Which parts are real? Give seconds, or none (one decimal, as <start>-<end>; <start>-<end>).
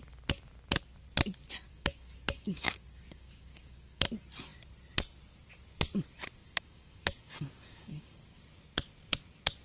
0.0-1.7; 4.1-6.4; 8.4-9.6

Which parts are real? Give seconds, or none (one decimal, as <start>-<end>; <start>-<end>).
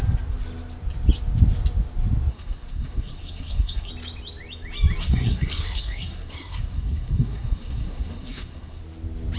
0.0-2.3; 3.9-5.0; 8.8-9.4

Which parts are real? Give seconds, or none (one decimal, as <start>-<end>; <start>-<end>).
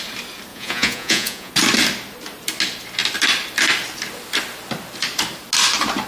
0.0-0.5; 1.5-6.1